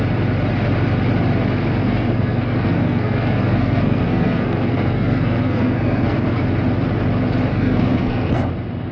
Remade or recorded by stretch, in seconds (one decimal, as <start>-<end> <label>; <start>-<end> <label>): 0.0-1.8 recorded; 1.8-6.4 remade; 6.4-7.5 recorded; 7.5-8.5 remade; 8.5-8.9 recorded